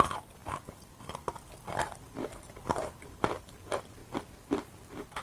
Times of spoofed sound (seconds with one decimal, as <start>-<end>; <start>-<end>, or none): none